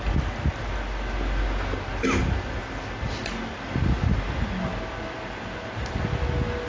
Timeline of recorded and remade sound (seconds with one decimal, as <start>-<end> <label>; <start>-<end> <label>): 0.0-6.7 recorded